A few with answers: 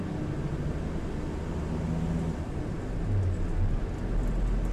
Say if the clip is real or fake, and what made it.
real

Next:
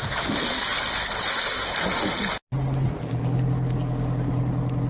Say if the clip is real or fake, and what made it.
real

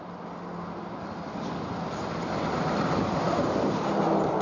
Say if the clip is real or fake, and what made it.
real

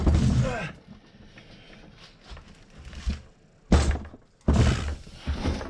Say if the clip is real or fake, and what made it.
real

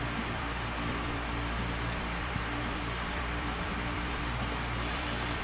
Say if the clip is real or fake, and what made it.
fake, vocoder, BigVGAN v2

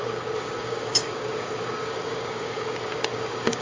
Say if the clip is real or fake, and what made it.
fake, codec, DAC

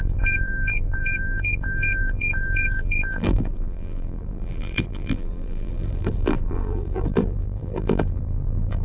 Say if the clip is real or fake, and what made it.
fake, vocoder, BigVGAN v2